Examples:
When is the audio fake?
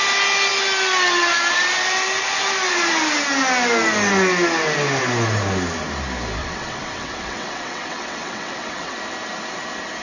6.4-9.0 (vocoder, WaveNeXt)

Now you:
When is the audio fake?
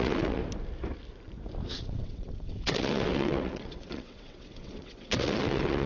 0.0-0.4 (vocoder, WaveNeXt); 1.7-5.9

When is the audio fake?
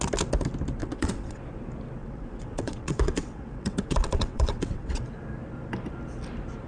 0.8-1.4 (vocoder, WaveNeXt); 2.0-5.0